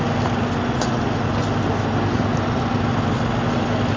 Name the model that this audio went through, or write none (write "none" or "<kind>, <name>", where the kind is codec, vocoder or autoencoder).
none